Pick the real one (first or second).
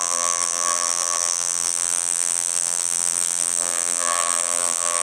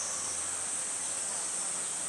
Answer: second